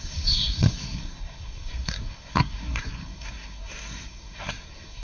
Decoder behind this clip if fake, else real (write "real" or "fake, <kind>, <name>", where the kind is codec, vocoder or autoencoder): fake, codec, SNAC